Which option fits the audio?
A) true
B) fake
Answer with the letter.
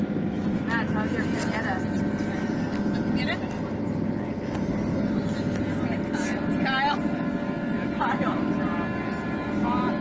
A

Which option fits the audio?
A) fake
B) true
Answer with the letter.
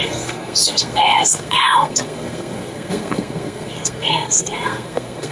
A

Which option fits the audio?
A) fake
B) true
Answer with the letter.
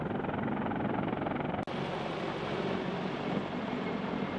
B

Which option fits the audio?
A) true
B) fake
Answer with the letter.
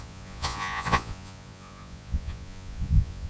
B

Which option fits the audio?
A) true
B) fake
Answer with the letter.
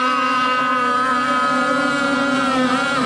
A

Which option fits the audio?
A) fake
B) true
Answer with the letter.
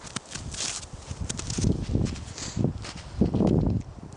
B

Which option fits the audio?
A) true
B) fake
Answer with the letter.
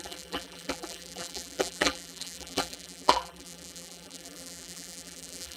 B